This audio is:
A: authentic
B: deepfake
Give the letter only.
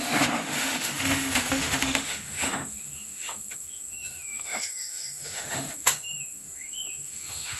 B